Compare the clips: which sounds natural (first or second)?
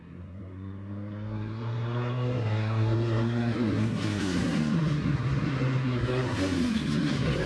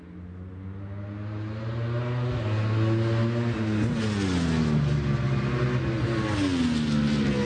second